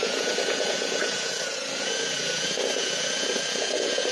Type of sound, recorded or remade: remade